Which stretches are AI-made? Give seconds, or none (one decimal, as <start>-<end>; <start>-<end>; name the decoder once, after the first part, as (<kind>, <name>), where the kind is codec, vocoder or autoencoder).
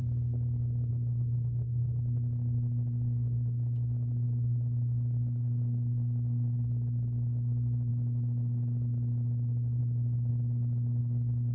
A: 0.9-7.9 (codec, DAC); 9.8-10.3; 11.0-11.5